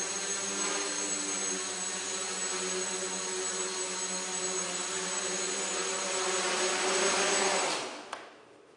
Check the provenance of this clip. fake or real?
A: real